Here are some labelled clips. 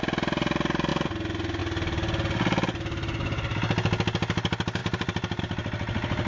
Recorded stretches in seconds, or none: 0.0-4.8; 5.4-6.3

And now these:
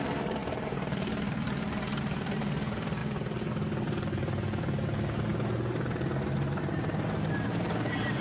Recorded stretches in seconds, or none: 3.0-6.6